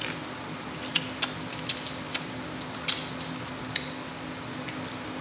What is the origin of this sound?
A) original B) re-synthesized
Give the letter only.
A